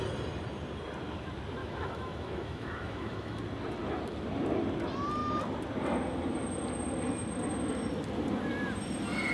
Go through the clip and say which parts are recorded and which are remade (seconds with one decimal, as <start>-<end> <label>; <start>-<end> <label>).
0.0-1.6 recorded; 1.6-3.4 remade; 3.4-9.3 recorded